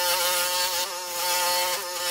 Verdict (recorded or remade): recorded